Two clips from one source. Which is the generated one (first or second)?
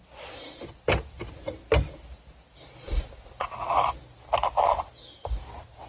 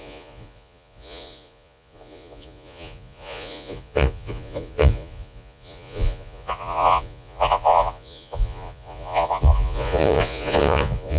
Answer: second